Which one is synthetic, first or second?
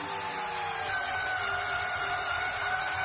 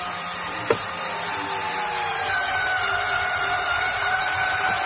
second